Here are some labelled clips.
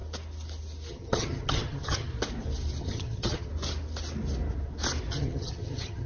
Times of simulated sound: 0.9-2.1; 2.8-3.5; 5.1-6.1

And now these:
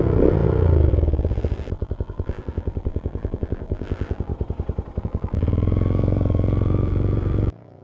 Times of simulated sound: 0.0-4.3; 5.0-7.8